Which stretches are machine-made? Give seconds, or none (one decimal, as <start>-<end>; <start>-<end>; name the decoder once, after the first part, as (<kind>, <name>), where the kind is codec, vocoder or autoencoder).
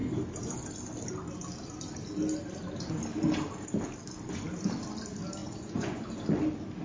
5.4-6.1 (vocoder, Vocos)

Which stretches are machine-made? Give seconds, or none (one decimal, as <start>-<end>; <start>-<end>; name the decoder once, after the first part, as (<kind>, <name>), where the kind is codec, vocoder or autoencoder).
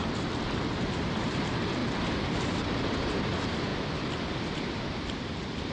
none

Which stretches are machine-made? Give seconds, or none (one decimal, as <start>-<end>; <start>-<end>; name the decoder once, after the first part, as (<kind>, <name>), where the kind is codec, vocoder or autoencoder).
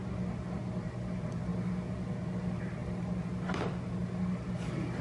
none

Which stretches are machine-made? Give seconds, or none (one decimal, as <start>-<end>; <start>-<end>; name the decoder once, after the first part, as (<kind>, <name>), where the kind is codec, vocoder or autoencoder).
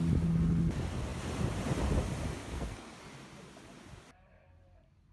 2.4-3.0 (codec, SNAC)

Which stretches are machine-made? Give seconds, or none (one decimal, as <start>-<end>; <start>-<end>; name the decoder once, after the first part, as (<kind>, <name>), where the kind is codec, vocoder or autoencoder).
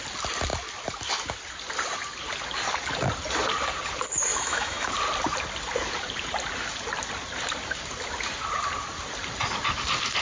4.3-4.9 (autoencoder, DAC-VAE)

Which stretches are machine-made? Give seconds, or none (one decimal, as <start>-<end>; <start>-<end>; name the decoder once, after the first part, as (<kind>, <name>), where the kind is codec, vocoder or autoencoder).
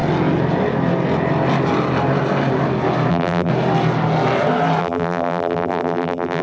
3.1-3.5 (vocoder, BigVGAN v2); 4.8-6.4